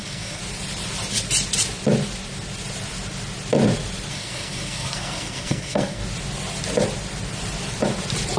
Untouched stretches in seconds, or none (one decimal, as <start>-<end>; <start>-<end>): 0.4-4.1; 6.0-8.4